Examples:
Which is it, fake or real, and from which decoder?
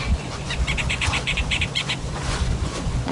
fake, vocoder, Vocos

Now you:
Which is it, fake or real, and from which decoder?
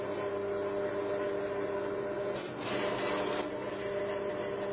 real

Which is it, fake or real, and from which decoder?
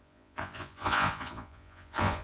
fake, vocoder, Vocos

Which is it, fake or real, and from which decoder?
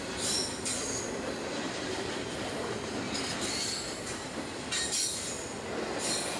real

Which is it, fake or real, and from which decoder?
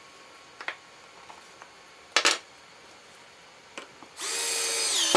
real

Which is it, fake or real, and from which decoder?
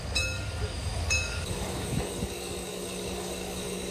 fake, codec, DAC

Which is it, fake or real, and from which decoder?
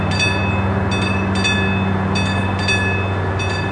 real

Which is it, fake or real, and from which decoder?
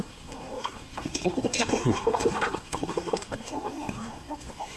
fake, codec, SNAC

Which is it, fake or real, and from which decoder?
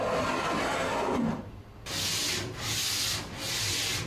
real